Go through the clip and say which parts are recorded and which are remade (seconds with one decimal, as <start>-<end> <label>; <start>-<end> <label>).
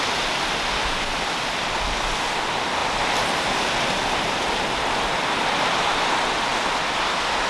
0.0-7.5 recorded